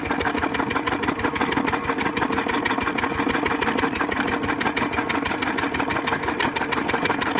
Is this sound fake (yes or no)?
no